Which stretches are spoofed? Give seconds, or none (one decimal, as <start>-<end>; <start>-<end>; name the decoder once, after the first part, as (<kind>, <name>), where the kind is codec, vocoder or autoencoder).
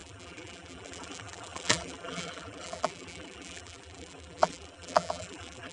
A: 0.0-5.7 (vocoder, BigVGAN v2)